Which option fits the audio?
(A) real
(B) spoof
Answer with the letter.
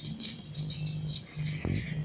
A